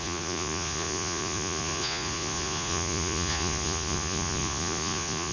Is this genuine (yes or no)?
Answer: no